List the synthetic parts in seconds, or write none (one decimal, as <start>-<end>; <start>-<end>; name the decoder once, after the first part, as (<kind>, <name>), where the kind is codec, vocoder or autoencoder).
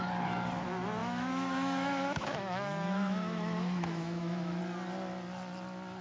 1.0-4.6 (autoencoder, DAC-VAE)